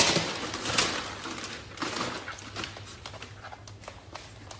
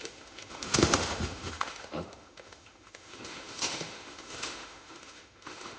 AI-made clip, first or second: second